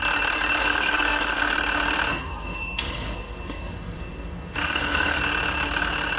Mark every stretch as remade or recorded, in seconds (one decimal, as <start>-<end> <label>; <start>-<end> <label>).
0.0-0.6 recorded; 0.6-1.4 remade; 1.4-2.1 recorded; 2.1-5.2 remade; 5.2-6.2 recorded